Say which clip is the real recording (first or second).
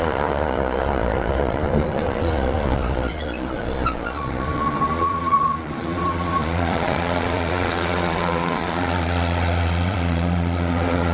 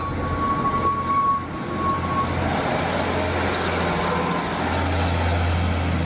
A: second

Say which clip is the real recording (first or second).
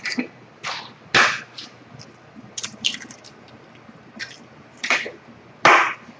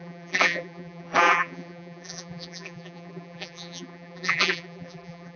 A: first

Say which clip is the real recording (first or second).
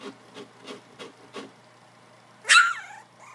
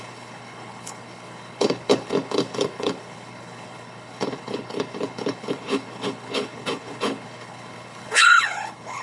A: first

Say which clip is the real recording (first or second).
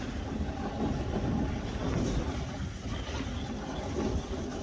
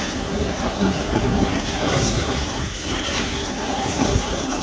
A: first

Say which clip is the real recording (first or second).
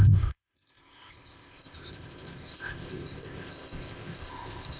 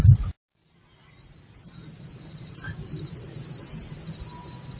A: second